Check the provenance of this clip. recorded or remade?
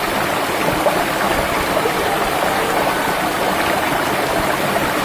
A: recorded